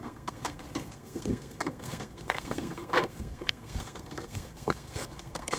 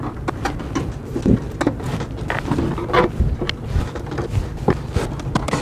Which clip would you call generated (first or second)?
first